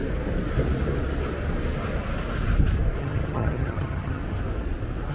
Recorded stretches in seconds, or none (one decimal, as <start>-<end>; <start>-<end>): 0.0-3.0; 4.2-5.1